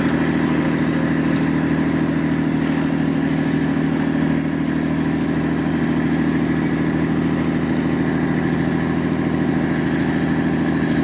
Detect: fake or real real